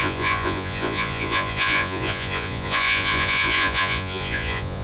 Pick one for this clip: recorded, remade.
remade